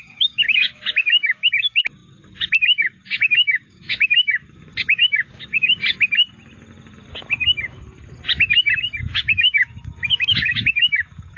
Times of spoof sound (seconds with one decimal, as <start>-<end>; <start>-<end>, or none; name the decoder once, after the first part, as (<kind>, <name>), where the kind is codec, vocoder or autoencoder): 0.0-5.8 (codec, DAC); 9.0-11.4